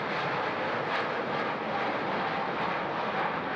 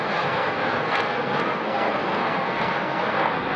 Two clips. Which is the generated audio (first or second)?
second